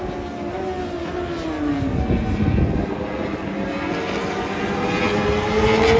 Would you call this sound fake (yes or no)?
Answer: no